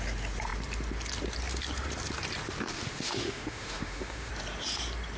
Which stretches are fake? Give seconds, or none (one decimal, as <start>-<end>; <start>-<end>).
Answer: 2.7-4.3